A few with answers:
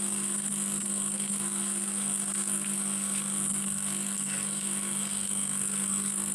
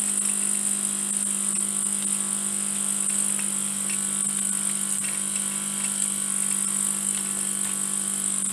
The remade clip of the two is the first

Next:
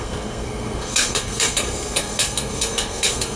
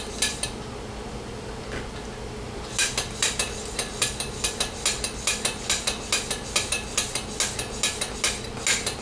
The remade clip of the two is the first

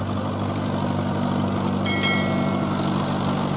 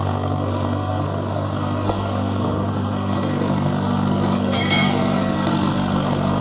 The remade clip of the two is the second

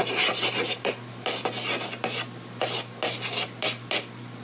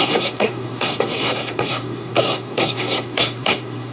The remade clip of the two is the second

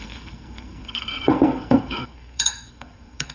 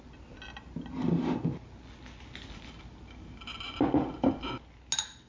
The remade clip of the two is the first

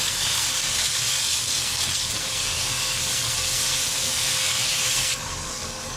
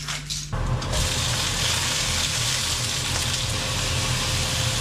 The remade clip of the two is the first